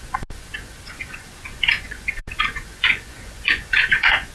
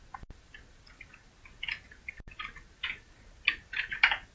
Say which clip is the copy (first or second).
first